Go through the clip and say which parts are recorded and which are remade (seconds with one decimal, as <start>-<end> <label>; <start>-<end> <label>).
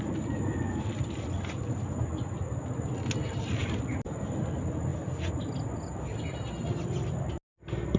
0.0-8.0 recorded